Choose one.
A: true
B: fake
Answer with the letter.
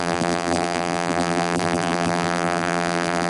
B